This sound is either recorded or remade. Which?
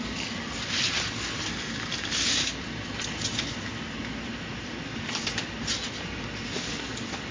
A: recorded